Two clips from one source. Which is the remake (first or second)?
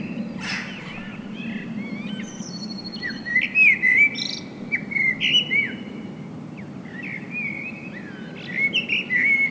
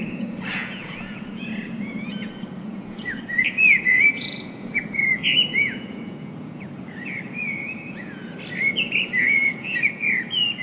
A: second